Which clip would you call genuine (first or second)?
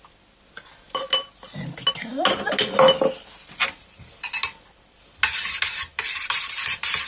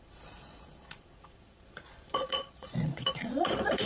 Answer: first